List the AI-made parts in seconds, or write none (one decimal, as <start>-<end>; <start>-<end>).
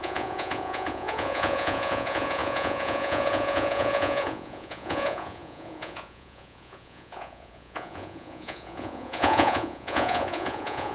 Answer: 0.0-10.9